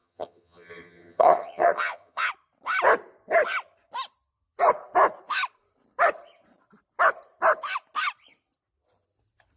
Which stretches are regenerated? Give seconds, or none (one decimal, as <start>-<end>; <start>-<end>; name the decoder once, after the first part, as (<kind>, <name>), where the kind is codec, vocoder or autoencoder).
0.0-2.3 (vocoder, HiFi-GAN)